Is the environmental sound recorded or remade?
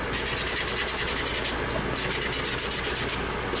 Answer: recorded